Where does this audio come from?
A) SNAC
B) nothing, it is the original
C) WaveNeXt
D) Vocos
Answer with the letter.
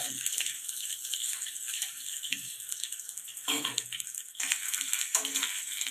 A